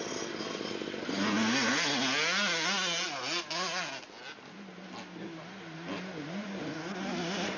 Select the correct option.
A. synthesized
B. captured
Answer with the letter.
B